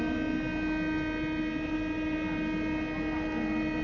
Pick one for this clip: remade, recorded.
recorded